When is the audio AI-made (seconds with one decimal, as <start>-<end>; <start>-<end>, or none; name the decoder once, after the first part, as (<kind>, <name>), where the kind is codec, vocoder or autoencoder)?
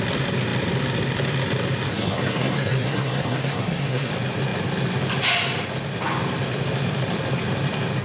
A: 1.9-4.1 (codec, SNAC)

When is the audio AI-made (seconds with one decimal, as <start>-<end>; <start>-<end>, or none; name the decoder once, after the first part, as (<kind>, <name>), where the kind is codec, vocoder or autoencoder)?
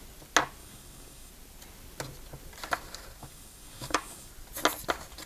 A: 0.6-1.3 (codec, DAC); 3.2-4.3